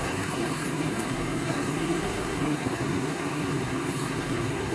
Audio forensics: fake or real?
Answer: fake